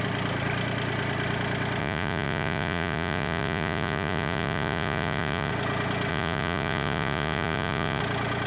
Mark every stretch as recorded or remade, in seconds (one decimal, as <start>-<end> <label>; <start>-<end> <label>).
0.0-1.8 recorded; 1.8-5.5 remade; 5.5-6.1 recorded; 6.1-8.0 remade; 8.0-8.5 recorded

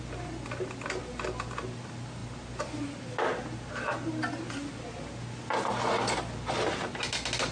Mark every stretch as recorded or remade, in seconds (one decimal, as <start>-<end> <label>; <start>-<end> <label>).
0.0-7.5 recorded

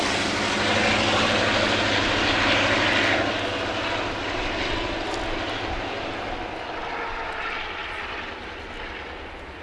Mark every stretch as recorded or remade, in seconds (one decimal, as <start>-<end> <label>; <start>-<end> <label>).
0.0-9.6 recorded

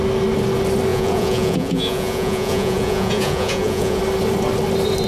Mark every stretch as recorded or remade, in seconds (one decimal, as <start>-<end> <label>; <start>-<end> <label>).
0.0-0.9 recorded; 0.9-4.0 remade; 4.0-5.1 recorded

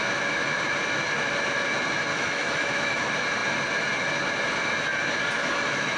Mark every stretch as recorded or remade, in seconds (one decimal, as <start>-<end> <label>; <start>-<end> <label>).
0.0-2.1 recorded; 2.1-3.0 remade; 3.0-5.4 recorded; 5.4-6.0 remade

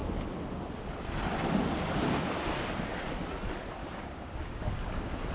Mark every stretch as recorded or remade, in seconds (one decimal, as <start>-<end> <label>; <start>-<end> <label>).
0.0-3.8 recorded; 3.8-5.3 remade